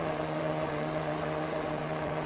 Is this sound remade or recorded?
remade